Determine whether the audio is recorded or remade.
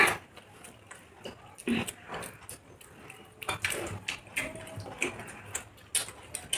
recorded